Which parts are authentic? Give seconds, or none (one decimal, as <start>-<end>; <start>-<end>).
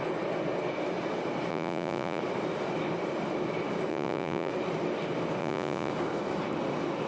0.0-1.5; 2.2-3.9; 4.5-5.4; 5.9-7.1